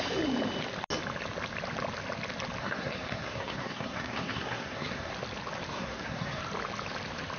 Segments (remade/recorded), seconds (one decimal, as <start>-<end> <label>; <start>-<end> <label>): 0.0-2.6 recorded; 2.6-5.1 remade; 5.1-5.7 recorded; 5.7-6.4 remade; 6.4-7.4 recorded